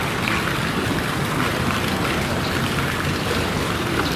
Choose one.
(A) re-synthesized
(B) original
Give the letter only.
B